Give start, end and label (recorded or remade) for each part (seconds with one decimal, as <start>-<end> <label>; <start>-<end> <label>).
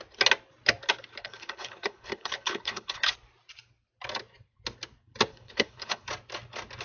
0.0-1.2 recorded; 1.2-3.1 remade; 3.1-5.3 recorded; 5.3-6.1 remade; 6.1-6.8 recorded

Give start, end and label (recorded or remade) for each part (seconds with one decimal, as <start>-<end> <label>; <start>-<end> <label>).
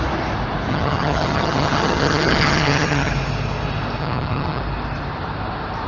0.0-0.7 recorded; 0.7-3.1 remade; 3.1-4.0 recorded; 4.0-4.6 remade; 4.6-5.9 recorded